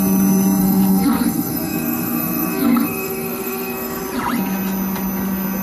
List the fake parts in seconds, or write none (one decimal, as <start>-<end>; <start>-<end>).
0.6-4.0